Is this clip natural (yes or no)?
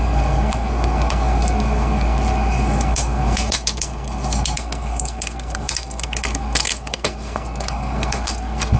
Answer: no